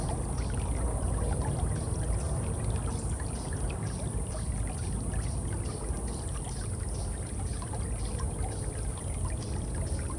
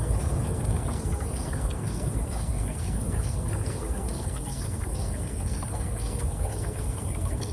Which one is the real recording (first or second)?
first